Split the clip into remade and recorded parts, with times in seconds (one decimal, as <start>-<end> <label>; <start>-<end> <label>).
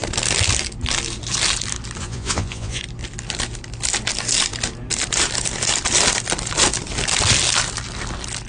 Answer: 0.0-2.0 recorded; 2.0-2.8 remade; 2.8-8.5 recorded